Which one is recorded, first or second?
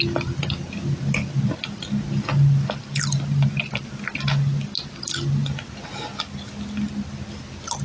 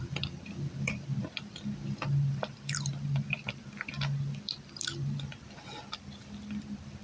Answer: first